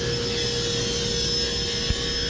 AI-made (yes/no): no